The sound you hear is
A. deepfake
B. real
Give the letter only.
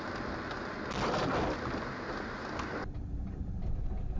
B